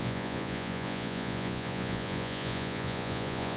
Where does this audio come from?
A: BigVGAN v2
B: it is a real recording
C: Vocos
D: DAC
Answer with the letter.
C